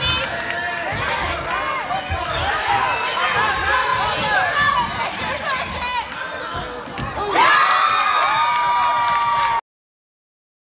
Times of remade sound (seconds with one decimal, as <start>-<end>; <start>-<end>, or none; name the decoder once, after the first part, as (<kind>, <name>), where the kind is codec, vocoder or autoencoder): none